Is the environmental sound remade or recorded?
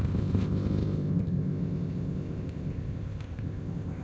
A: remade